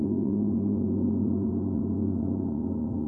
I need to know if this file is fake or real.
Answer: fake